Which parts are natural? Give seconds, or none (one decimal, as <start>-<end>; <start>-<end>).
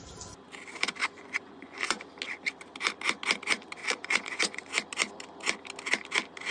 0.0-1.0; 2.1-3.8; 4.7-6.5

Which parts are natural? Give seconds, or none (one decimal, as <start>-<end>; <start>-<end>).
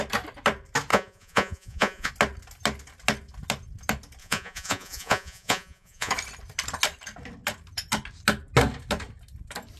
0.0-0.9; 2.1-4.2; 6.1-9.8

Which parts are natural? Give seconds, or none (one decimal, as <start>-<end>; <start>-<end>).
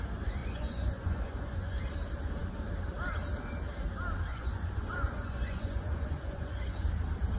0.0-0.4; 1.8-4.3; 6.9-7.4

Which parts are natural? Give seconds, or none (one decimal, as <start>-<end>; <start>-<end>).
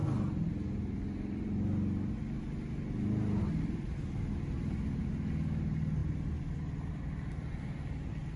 0.0-8.4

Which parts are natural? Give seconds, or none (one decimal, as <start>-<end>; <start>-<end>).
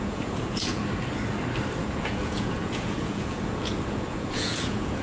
0.8-1.8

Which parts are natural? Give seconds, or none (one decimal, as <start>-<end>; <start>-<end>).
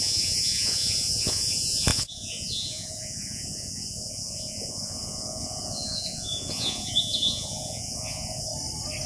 8.5-9.1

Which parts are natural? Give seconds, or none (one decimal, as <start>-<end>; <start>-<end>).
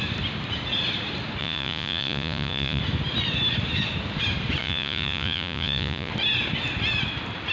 0.0-1.4; 2.8-4.6; 6.1-7.5